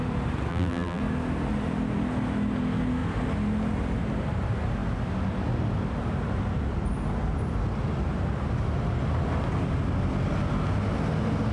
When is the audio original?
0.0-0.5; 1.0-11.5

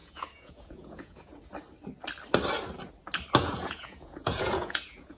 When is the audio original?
1.3-3.4

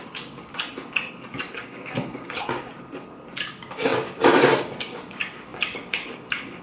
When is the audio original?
0.5-1.5; 2.7-3.4

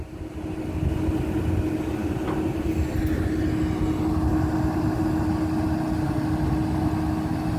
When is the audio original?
0.0-7.6

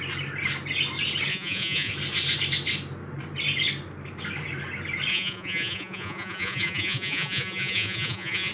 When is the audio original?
0.0-1.3; 1.9-5.1

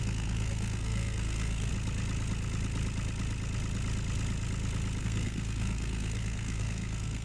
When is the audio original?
1.7-5.0

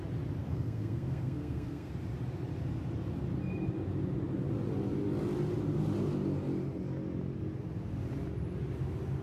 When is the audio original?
0.0-0.4; 1.9-9.2

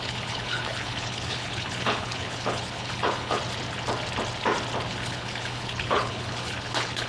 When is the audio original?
3.4-4.9